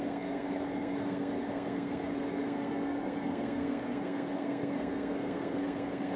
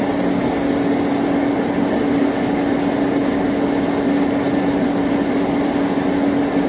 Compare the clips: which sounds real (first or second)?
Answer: second